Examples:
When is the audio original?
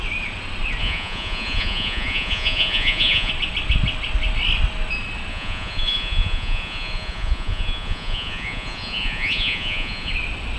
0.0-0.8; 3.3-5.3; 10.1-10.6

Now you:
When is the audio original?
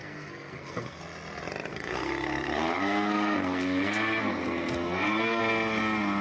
1.0-1.7; 5.4-6.2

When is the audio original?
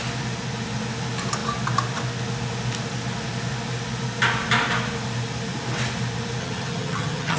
0.0-6.4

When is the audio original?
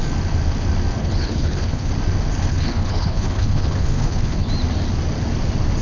0.0-1.0; 1.9-2.4; 4.5-5.8